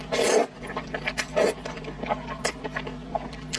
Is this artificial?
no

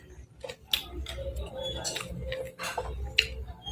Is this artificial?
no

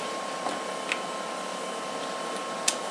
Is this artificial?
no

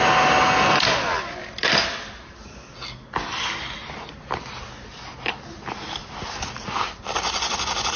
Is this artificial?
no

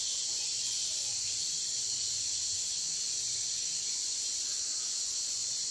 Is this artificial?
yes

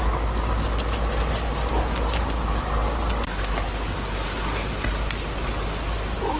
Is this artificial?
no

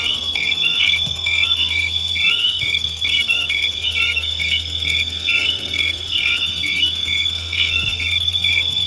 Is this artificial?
yes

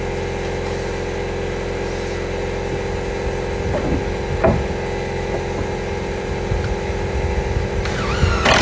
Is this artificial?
no